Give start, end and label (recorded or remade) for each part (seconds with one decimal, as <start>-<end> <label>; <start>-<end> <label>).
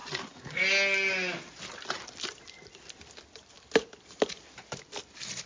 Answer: 0.0-5.5 recorded